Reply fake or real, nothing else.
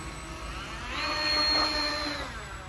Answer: real